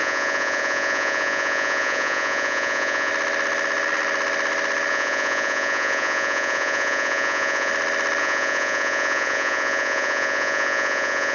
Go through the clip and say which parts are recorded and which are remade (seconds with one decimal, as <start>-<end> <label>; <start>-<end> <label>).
0.0-3.1 remade; 3.1-4.9 recorded; 4.9-7.7 remade; 7.7-8.2 recorded; 8.2-11.3 remade